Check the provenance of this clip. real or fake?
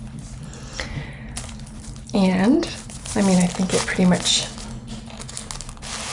real